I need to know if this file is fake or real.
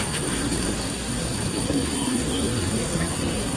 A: fake